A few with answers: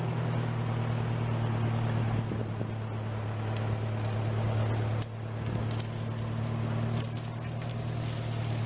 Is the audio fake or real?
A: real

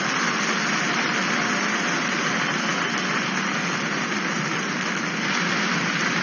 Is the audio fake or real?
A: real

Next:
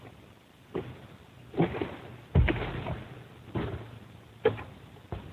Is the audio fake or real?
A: fake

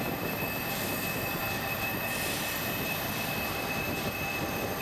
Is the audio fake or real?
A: fake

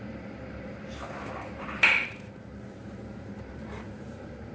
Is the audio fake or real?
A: fake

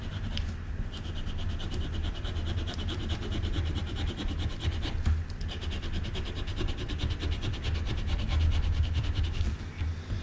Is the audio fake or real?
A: real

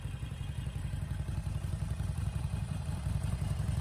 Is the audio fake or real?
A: fake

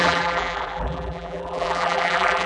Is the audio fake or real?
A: fake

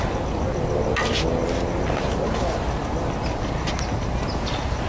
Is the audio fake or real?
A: real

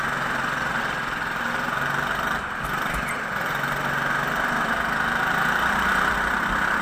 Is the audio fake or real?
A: real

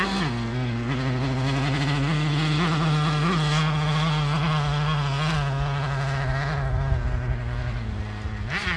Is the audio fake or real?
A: real